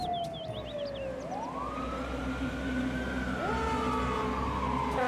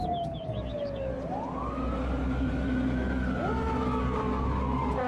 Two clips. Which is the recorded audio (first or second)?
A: first